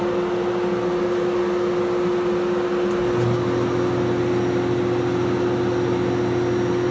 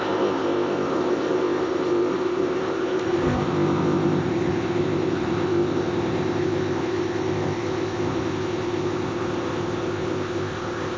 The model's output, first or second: second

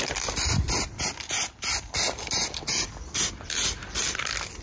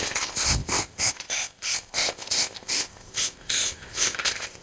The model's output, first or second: second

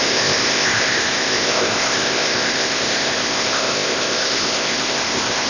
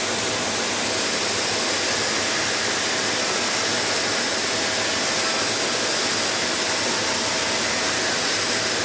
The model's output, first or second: first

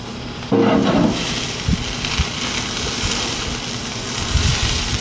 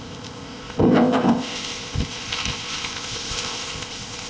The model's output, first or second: second